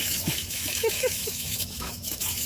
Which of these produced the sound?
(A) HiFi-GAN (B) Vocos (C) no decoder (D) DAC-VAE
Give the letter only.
D